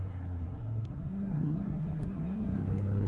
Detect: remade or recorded remade